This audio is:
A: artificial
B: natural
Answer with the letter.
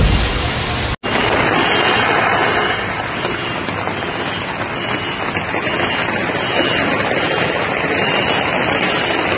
B